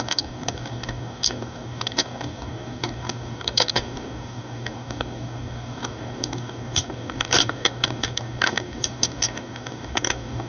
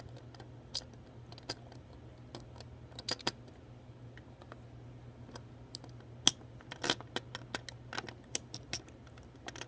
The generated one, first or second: first